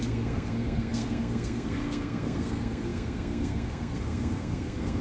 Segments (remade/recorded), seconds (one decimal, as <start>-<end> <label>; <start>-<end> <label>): 0.0-5.0 remade